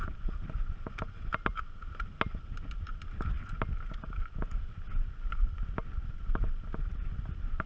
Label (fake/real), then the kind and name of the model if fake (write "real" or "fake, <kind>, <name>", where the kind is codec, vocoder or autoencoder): real